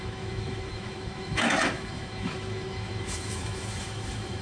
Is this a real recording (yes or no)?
no